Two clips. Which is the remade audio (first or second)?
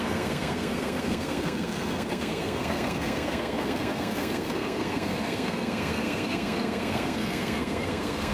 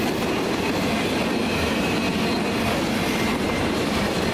first